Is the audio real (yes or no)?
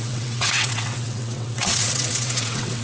no